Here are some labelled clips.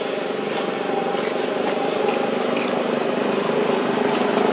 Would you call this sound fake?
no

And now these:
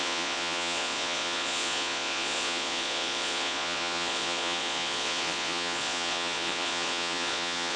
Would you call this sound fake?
yes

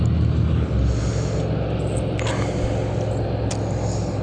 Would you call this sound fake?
no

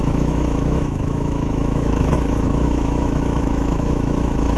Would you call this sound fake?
yes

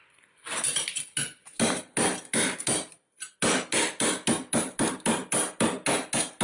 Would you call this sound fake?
no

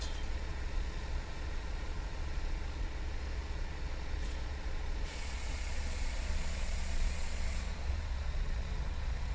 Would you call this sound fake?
yes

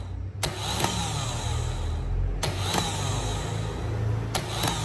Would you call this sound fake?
no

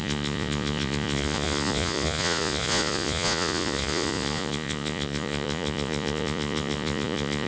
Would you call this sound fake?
yes